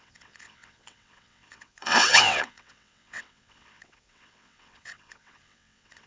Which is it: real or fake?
fake